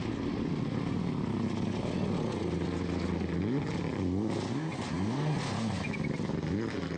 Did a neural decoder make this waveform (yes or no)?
no